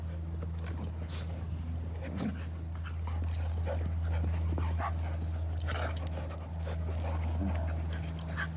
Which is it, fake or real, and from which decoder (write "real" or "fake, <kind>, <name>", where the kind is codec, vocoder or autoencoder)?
real